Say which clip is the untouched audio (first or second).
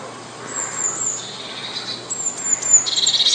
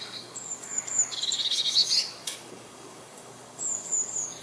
first